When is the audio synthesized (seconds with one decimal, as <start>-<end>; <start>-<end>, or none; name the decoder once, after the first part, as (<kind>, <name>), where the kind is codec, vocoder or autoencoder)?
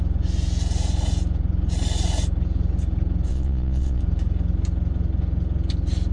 3.3-4.0 (vocoder, Vocos)